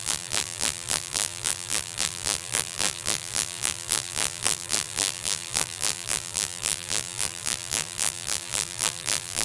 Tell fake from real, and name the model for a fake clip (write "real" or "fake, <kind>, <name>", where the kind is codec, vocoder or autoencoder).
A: fake, vocoder, BigVGAN v2